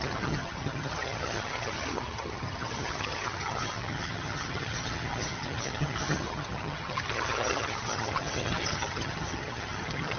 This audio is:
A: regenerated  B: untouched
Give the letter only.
A